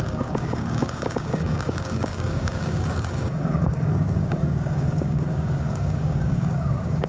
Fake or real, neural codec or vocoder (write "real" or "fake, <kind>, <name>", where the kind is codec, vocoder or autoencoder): fake, codec, DAC